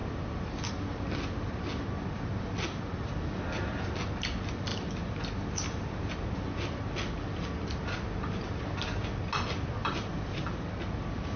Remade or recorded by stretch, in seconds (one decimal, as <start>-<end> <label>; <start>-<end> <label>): 0.0-0.7 remade; 0.7-9.8 recorded; 9.8-10.7 remade; 10.7-11.4 recorded